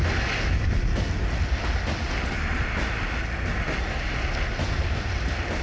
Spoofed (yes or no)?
no